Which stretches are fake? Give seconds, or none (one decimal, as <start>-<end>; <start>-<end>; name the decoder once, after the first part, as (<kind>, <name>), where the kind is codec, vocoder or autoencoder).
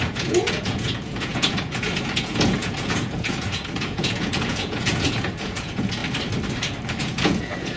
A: 0.0-6.0 (vocoder, Vocos); 7.0-7.8